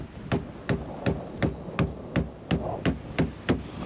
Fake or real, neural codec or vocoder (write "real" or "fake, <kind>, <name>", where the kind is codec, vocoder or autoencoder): real